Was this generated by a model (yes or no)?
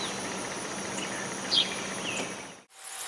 no